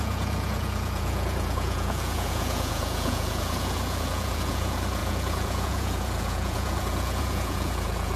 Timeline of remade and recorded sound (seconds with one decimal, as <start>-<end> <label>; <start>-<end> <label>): 0.0-8.2 remade